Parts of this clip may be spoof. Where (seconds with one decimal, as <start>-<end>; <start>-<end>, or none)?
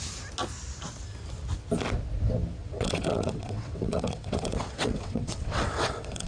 2.6-6.3